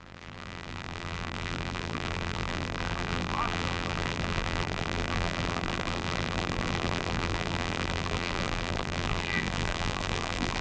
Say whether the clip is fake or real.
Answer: fake